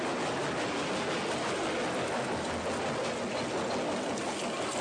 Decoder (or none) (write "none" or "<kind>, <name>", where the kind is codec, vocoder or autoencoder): none